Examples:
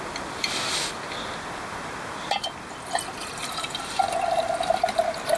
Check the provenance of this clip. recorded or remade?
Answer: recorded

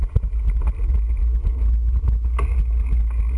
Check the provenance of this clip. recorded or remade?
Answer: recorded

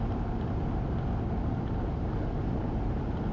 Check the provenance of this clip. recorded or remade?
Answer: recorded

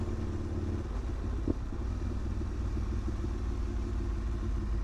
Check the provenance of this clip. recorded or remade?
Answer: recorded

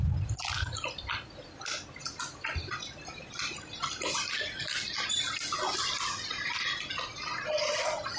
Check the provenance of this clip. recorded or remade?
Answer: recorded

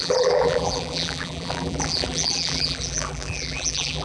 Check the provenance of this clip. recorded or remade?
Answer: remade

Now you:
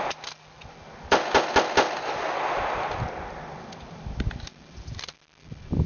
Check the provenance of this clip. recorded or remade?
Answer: recorded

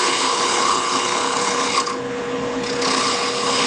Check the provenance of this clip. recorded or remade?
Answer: remade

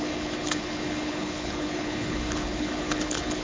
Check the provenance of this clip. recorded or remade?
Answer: remade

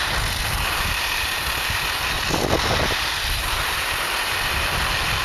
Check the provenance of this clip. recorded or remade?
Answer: recorded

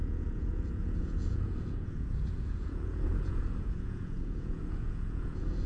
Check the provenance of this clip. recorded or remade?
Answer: remade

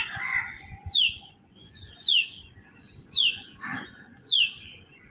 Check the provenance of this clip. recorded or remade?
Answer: remade